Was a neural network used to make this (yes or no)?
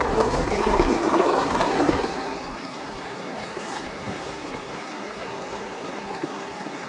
yes